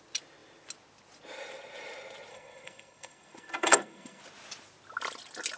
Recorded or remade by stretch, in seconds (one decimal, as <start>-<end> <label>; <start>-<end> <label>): 0.0-2.3 recorded; 2.3-4.2 remade; 4.2-5.6 recorded